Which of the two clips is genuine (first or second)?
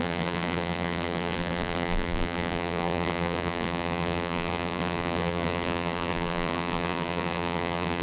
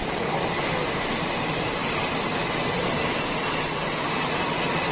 second